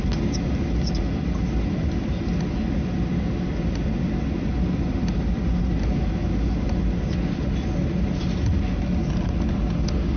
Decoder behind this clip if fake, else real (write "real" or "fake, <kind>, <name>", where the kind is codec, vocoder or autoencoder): real